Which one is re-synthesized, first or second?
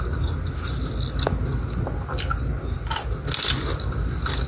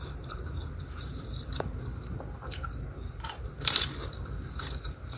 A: second